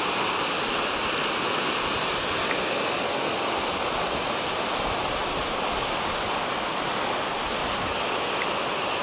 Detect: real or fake real